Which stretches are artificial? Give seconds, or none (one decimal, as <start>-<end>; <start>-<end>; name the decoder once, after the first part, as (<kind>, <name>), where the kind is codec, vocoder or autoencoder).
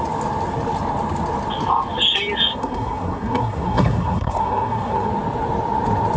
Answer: 2.5-5.1 (codec, SNAC)